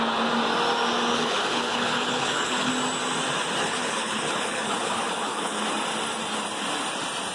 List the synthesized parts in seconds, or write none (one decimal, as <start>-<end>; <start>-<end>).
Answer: 1.1-2.7; 3.6-5.6